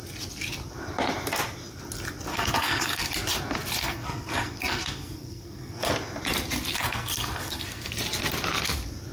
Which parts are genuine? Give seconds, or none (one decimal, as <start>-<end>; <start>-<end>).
0.0-2.3; 3.1-3.8; 5.9-6.7; 7.9-9.1